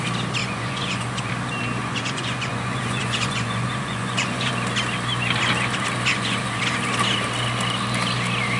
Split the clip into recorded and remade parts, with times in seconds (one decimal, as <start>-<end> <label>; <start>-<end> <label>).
0.0-0.4 recorded; 0.4-1.3 remade; 1.3-1.8 recorded; 1.8-4.5 remade; 4.5-6.1 recorded; 6.1-6.6 remade; 6.6-8.6 recorded